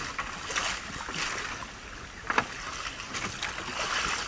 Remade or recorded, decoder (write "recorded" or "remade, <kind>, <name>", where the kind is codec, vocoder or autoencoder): recorded